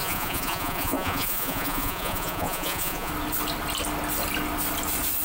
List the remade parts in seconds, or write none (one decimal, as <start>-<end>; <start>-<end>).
0.0-3.1